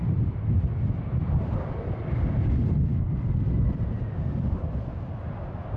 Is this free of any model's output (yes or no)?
no